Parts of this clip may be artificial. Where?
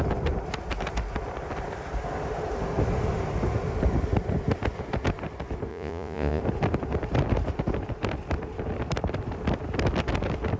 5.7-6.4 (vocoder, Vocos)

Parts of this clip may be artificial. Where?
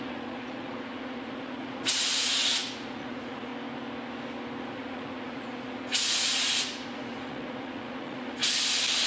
0.0-3.5 (vocoder, Vocos); 4.6-8.4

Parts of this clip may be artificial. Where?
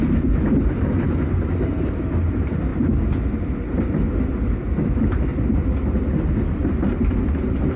none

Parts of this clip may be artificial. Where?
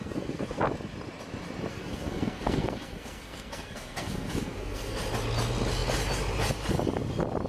0.0-0.6 (codec, SNAC); 1.7-5.0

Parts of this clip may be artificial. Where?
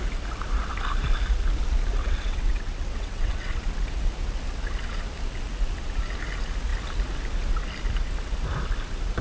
2.0-3.6 (vocoder, WaveNeXt)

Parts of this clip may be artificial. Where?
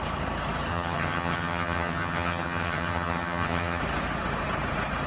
0.7-3.8 (vocoder, HiFi-GAN)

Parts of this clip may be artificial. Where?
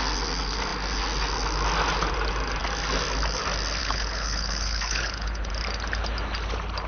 3.8-5.5 (codec, HILCodec)